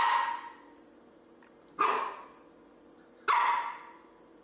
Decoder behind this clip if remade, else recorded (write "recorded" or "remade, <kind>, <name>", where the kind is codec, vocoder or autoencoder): recorded